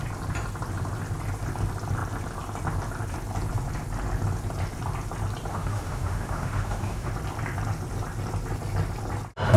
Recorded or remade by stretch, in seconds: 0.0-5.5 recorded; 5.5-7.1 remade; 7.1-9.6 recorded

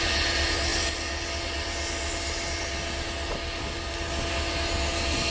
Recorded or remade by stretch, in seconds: 0.0-5.3 recorded

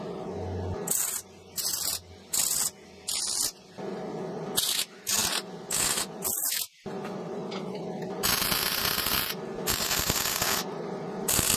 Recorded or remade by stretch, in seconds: 0.0-11.6 recorded

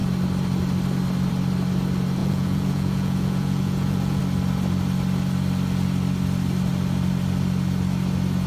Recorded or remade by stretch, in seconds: 0.0-2.2 recorded; 2.2-4.2 remade; 4.2-8.5 recorded

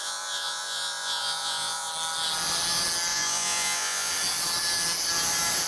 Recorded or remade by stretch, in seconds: 0.0-1.9 remade; 1.9-3.1 recorded; 3.1-4.1 remade; 4.1-5.7 recorded

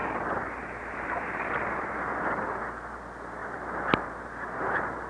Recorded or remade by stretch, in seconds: 0.0-2.2 remade; 2.2-3.4 recorded; 3.4-5.1 remade